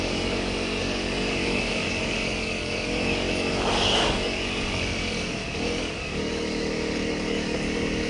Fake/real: fake